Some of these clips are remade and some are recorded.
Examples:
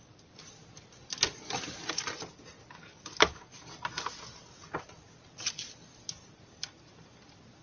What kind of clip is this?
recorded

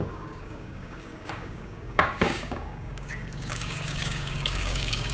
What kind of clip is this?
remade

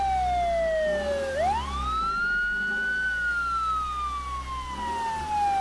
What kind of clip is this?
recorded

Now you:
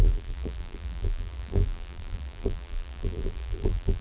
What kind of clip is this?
remade